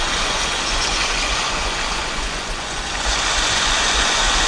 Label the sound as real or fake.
fake